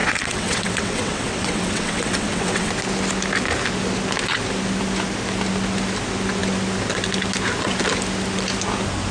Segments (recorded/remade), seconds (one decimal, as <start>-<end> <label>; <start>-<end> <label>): 0.0-2.7 remade; 2.7-9.1 recorded